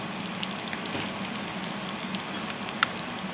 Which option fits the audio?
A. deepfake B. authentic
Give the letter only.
B